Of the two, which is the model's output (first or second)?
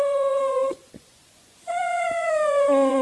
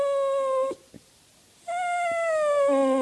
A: first